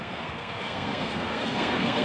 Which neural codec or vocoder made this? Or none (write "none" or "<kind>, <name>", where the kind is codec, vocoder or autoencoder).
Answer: codec, SNAC